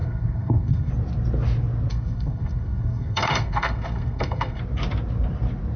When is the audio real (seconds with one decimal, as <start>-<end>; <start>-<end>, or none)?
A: 0.9-1.9; 4.6-5.8